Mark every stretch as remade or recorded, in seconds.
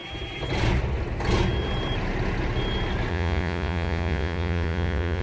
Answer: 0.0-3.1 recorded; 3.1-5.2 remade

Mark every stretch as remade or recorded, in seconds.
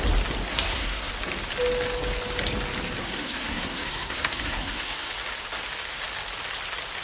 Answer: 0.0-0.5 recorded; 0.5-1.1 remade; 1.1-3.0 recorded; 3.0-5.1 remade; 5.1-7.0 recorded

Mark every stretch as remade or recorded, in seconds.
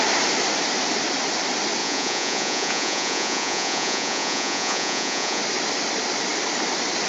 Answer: 0.0-1.8 recorded; 1.8-5.4 remade; 5.4-7.1 recorded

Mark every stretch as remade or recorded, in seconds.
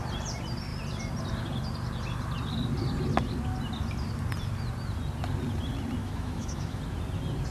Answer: 0.0-6.0 recorded; 6.0-6.8 remade; 6.8-7.5 recorded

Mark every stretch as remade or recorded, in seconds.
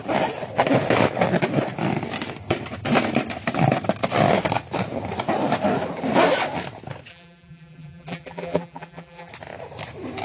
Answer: 0.0-7.1 recorded; 7.1-9.3 remade; 9.3-10.2 recorded